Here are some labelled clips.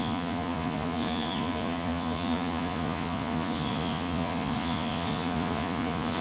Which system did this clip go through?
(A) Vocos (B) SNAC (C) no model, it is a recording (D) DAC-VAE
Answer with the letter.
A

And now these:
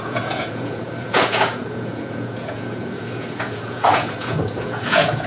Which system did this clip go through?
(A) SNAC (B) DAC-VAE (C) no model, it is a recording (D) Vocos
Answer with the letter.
D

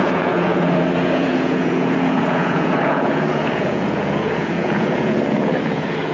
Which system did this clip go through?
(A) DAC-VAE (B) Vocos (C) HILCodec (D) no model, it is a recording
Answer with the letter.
B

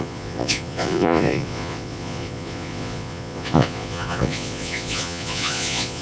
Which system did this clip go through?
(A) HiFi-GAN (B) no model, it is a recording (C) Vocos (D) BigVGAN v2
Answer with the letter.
C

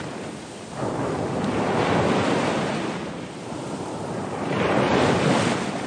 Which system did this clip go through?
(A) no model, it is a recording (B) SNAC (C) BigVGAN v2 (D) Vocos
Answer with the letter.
A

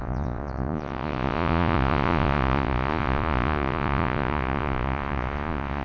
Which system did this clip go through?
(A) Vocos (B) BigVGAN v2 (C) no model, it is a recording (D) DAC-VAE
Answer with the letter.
A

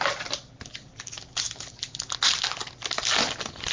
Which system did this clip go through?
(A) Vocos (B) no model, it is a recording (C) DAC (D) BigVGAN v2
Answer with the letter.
B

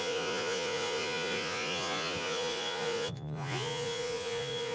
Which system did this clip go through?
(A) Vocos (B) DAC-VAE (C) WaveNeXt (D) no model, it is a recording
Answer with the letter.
A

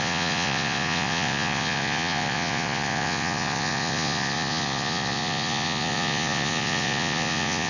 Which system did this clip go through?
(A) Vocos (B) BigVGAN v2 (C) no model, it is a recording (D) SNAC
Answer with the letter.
A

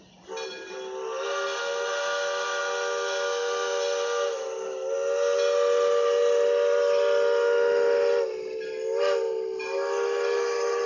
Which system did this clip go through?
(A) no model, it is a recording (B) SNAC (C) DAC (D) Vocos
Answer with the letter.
A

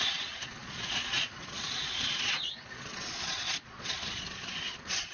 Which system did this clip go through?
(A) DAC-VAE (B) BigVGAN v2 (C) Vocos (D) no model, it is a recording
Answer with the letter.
C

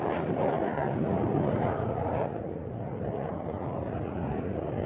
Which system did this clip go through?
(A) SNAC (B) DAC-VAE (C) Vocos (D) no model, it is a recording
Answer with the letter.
C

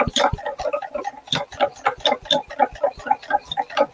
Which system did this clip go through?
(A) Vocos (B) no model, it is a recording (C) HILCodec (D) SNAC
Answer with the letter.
B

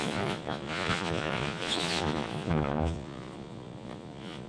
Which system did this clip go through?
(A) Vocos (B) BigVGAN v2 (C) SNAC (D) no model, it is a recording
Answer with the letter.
A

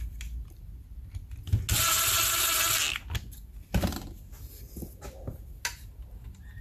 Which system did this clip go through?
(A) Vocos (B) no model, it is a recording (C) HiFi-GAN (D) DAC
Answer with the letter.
B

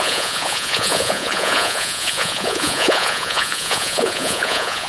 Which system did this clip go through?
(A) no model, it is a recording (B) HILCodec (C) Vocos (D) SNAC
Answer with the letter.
C